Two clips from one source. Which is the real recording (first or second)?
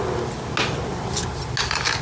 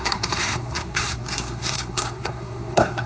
first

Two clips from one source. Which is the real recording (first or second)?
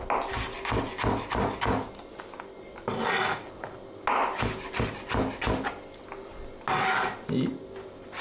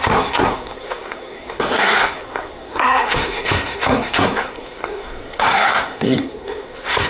first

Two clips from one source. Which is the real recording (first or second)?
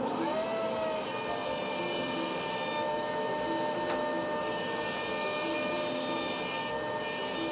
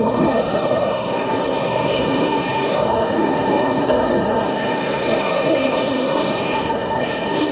first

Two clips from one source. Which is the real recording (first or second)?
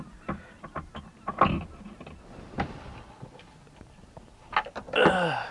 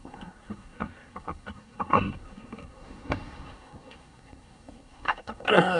first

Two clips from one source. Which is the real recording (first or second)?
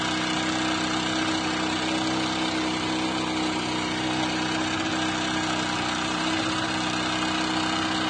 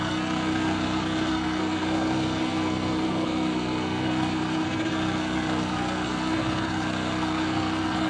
first